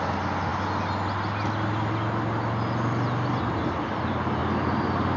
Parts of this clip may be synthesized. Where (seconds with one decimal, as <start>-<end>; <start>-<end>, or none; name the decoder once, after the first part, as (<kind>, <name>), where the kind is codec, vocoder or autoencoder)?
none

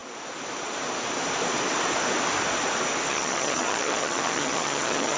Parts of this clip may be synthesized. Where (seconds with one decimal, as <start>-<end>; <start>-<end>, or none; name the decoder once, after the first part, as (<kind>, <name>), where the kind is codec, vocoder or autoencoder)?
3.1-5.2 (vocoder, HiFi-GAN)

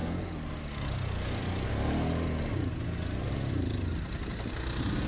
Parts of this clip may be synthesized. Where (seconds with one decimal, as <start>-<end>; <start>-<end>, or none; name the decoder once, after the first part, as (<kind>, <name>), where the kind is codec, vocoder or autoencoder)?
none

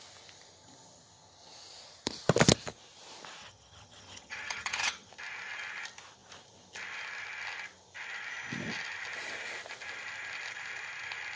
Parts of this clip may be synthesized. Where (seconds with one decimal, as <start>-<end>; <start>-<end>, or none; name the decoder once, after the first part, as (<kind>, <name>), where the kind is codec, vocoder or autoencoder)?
3.4-5.1 (vocoder, HiFi-GAN)